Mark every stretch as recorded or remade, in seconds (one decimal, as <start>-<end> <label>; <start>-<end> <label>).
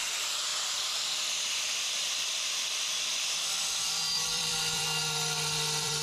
0.0-6.0 remade